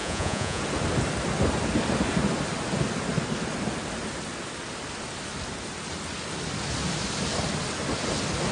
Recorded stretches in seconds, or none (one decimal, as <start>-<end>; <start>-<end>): 0.6-8.5